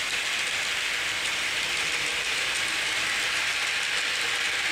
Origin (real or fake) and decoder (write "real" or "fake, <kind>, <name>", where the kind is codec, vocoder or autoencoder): real